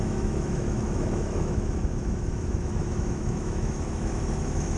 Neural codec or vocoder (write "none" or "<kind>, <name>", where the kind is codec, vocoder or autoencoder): autoencoder, DAC-VAE